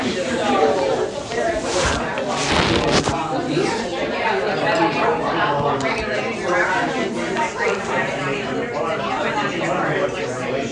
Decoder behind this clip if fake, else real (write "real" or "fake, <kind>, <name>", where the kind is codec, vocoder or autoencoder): fake, vocoder, BigVGAN v2